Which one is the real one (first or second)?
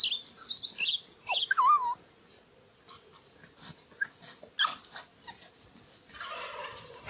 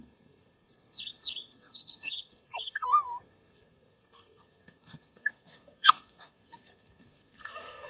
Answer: first